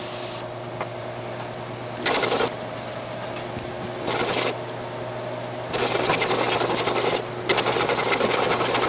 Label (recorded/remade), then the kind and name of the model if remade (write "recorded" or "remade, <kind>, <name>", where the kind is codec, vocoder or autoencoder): recorded